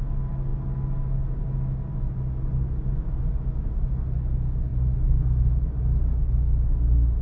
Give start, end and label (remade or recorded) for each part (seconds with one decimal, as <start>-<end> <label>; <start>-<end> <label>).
0.0-7.2 recorded